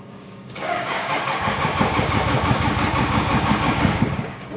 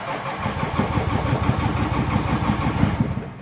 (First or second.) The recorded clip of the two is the second